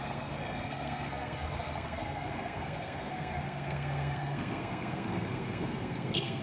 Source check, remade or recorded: remade